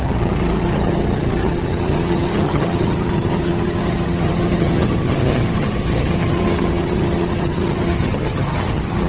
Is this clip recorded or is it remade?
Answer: remade